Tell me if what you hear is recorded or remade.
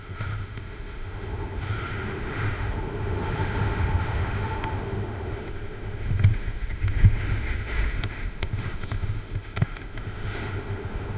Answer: remade